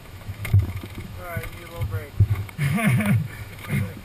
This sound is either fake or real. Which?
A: fake